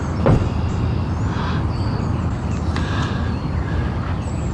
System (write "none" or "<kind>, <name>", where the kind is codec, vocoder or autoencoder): none